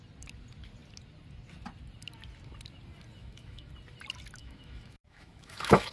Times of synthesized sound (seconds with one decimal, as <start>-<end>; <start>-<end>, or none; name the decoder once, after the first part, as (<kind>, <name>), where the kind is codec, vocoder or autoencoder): 3.2-3.7 (autoencoder, DAC-VAE); 4.4-5.9